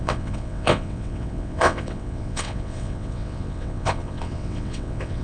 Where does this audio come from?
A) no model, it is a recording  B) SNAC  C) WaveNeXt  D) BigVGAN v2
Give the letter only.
C